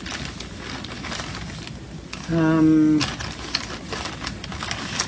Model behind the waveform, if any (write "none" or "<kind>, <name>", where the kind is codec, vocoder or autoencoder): none